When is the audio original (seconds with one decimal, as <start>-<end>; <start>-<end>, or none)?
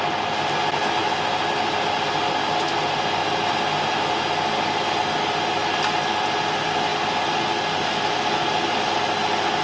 0.0-9.6